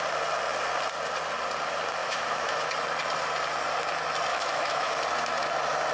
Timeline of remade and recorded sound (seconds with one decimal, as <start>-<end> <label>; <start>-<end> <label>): 0.0-2.0 recorded; 2.0-2.7 remade; 2.7-4.3 recorded; 4.3-4.9 remade; 4.9-5.9 recorded